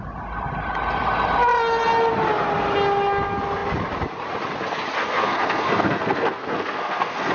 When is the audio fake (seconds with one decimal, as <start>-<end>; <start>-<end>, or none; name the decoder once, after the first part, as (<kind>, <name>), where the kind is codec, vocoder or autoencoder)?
5.0-7.3 (codec, SNAC)